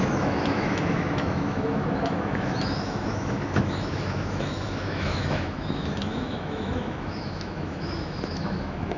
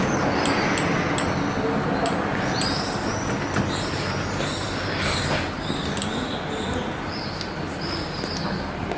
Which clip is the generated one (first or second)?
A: first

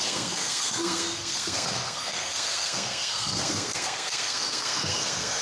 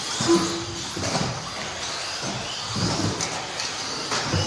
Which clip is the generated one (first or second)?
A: first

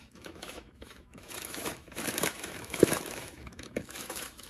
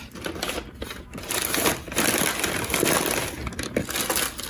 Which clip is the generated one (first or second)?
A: first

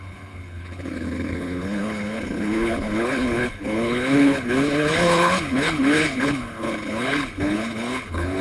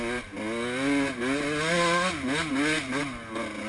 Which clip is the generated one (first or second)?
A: first